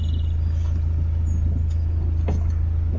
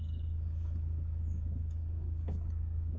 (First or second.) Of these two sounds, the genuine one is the first